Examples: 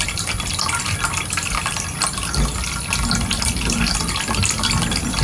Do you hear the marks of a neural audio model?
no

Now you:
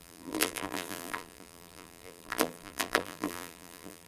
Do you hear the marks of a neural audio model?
yes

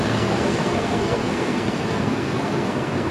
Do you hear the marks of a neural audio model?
yes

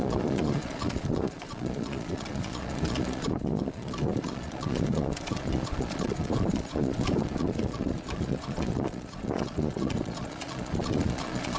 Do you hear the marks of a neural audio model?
yes